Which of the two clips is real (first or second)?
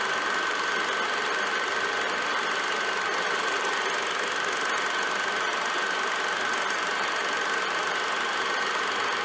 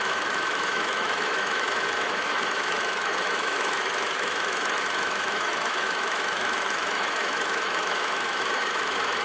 first